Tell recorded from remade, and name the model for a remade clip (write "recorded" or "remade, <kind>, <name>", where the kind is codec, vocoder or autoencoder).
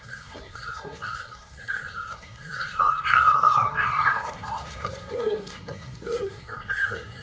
remade, codec, SNAC